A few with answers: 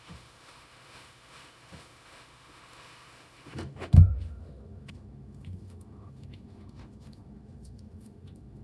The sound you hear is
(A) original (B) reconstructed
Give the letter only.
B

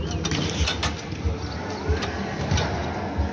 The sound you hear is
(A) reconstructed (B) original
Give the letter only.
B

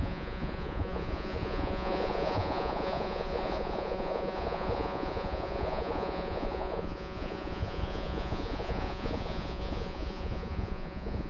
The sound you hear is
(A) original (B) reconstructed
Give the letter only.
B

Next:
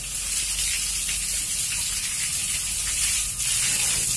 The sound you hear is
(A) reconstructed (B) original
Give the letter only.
B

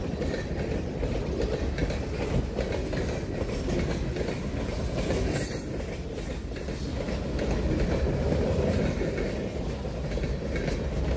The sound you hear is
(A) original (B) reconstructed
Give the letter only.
A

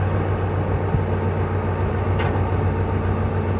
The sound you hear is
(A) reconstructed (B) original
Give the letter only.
B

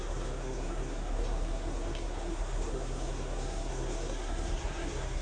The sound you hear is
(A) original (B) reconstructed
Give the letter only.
B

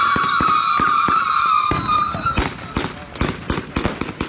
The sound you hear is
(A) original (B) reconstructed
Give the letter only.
A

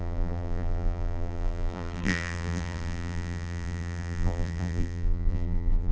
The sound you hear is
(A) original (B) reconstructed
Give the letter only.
B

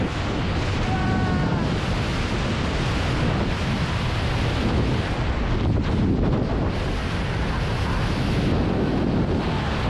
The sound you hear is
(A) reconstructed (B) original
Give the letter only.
B